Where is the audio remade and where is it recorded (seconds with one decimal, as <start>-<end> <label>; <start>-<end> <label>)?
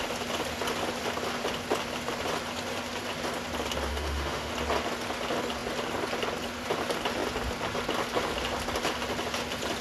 0.0-3.9 recorded; 3.9-4.5 remade; 4.5-9.8 recorded